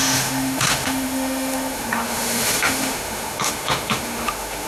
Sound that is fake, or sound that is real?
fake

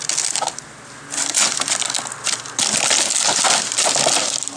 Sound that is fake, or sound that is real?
real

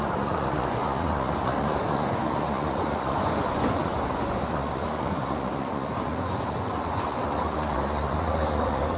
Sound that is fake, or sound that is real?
fake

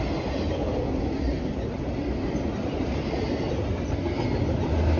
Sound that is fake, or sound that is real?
real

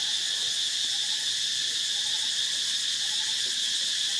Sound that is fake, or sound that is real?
real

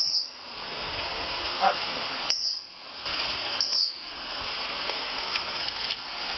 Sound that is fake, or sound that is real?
fake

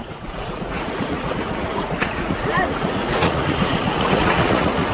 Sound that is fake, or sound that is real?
fake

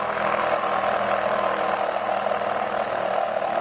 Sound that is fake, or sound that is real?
real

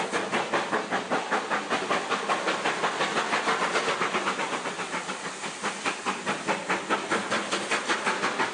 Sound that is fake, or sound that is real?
real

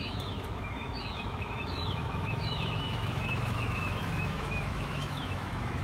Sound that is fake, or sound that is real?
fake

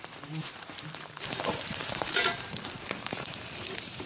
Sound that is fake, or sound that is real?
fake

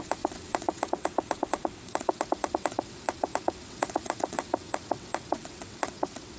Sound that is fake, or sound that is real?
fake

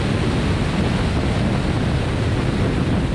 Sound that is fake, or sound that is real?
real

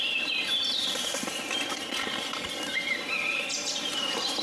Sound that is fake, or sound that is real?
fake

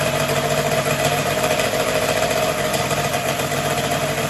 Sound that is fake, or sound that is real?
fake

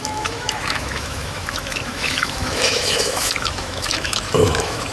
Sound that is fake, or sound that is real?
fake